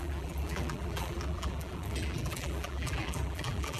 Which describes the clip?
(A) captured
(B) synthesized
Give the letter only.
B